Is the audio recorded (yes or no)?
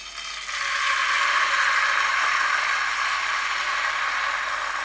yes